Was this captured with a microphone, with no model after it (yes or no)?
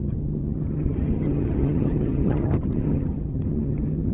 no